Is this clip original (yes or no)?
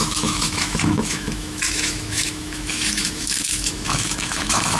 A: no